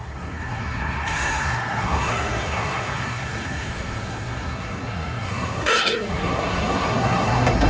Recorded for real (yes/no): no